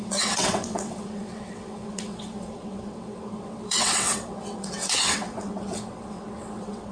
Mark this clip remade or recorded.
remade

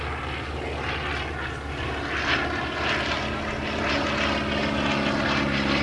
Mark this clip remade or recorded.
recorded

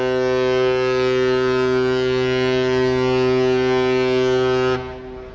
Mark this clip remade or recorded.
recorded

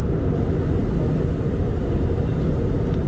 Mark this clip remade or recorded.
recorded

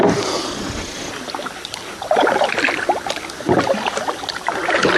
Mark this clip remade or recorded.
recorded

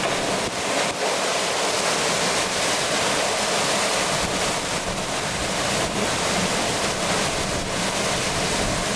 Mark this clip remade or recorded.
recorded